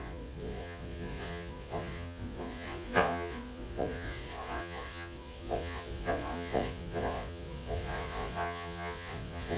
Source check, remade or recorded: remade